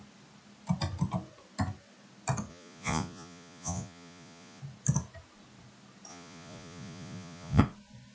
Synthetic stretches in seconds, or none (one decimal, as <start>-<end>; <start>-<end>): 2.5-4.6; 6.1-7.6